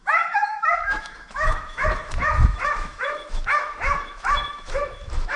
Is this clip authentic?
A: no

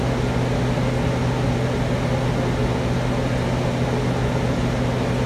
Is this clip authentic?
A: yes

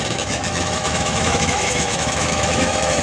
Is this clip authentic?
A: no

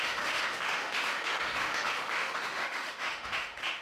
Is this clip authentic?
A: no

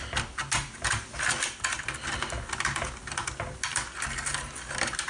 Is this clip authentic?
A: yes